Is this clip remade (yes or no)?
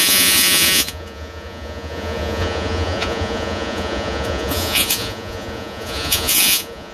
yes